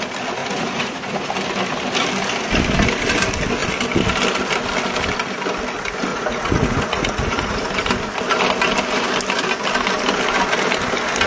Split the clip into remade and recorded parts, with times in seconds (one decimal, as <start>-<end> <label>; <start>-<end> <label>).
0.0-0.4 recorded; 0.4-1.3 remade; 1.3-6.1 recorded; 6.1-7.6 remade; 7.6-11.3 recorded